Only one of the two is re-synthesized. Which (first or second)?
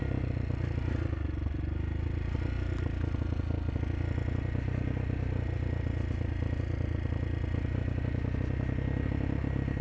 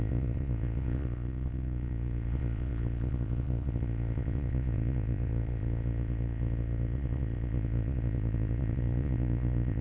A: second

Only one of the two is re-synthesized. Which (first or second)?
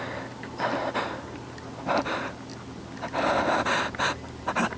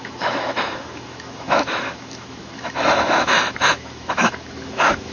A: second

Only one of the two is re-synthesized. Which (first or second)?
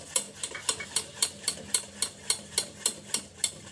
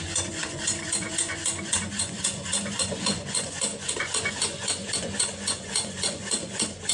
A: second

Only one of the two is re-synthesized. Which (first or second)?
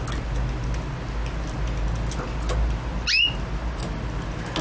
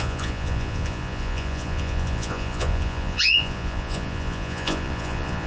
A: second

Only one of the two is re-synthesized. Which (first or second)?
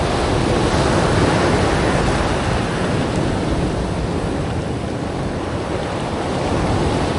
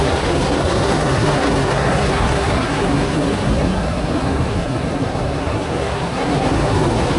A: second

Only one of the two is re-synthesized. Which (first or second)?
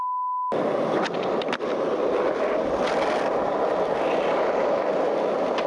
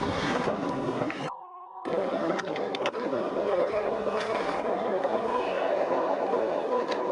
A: second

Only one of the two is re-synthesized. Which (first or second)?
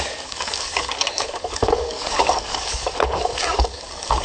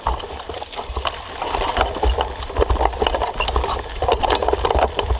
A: first